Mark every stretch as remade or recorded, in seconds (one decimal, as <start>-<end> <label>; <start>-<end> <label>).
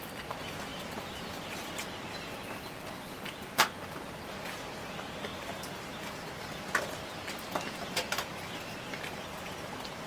0.0-10.1 recorded